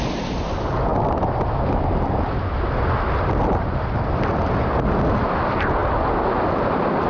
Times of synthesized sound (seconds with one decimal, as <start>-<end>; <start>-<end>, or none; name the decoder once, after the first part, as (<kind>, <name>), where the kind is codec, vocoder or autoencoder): none